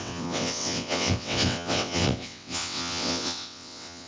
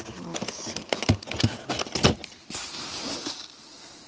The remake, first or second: first